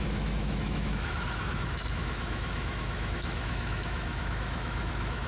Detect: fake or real fake